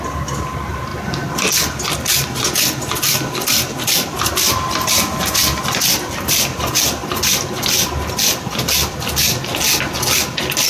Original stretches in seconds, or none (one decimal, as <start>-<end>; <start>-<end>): 0.0-10.7